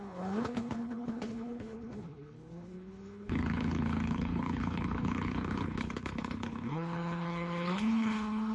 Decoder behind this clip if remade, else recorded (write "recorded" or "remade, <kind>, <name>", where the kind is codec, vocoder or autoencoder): remade, codec, HILCodec